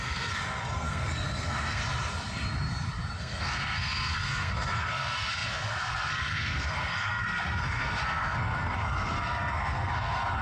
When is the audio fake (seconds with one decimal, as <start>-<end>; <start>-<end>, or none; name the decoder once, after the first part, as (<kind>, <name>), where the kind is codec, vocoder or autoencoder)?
0.0-1.8 (codec, SNAC); 3.2-10.4